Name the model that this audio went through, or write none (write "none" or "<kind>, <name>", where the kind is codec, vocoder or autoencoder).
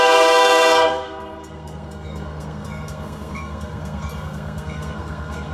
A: codec, SNAC